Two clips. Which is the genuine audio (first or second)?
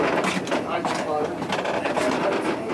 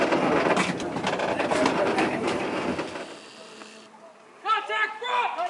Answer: first